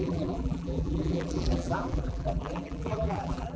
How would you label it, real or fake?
fake